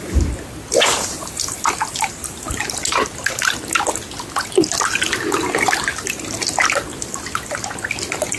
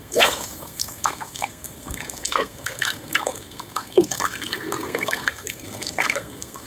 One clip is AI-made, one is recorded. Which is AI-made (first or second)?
second